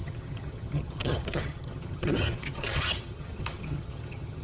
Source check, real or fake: fake